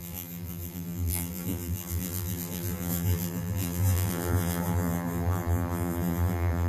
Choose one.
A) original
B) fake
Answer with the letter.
B